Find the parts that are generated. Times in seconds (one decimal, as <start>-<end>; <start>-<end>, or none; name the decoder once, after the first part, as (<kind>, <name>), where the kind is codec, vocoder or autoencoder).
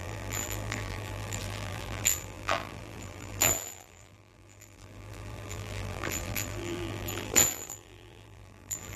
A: 0.0-9.0 (vocoder, BigVGAN v2)